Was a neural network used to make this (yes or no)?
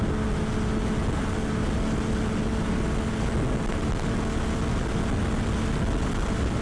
no